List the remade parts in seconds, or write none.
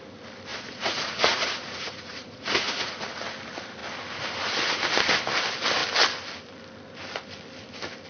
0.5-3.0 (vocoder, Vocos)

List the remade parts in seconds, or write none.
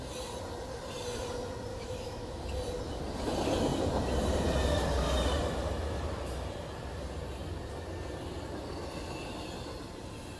1.7-2.4 (autoencoder, DAC-VAE)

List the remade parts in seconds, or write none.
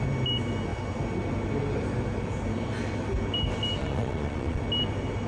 3.8-4.6 (vocoder, Vocos)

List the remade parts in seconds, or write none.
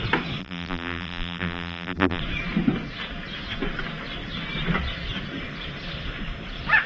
0.4-2.2 (vocoder, BigVGAN v2)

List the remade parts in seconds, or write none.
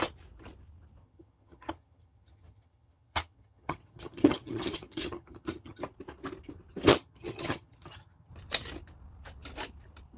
1.0-5.8 (vocoder, HiFi-GAN); 6.9-8.3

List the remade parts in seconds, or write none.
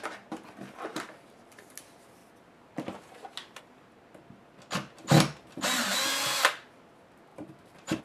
0.9-1.7 (vocoder, BigVGAN v2); 7.3-8.0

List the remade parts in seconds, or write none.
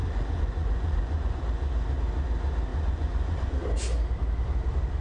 0.0-1.4 (vocoder, Vocos); 2.7-3.5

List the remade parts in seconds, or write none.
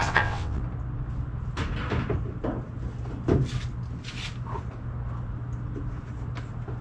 0.0-0.6 (vocoder, WaveNeXt)